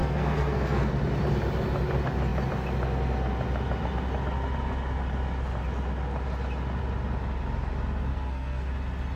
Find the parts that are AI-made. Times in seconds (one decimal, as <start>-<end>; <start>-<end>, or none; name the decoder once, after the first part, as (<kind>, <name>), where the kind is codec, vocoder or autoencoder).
0.0-0.9 (codec, SNAC); 8.1-8.7